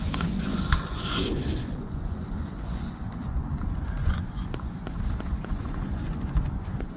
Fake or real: fake